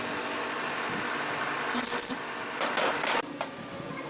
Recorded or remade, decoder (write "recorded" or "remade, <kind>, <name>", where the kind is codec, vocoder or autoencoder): recorded